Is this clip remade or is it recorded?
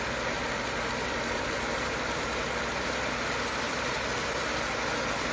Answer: recorded